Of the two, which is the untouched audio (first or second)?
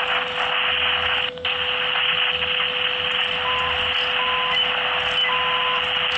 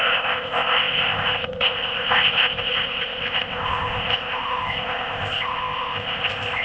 first